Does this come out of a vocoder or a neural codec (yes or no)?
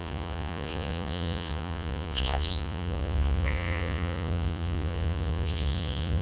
yes